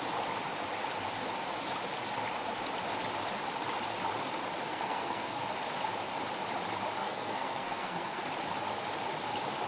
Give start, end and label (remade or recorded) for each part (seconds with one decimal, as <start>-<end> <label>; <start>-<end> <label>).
0.0-4.7 recorded; 4.7-5.4 remade; 5.4-7.0 recorded; 7.0-8.2 remade; 8.2-9.7 recorded